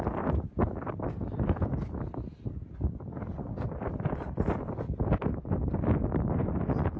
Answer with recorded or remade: recorded